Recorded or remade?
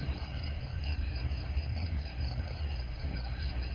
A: remade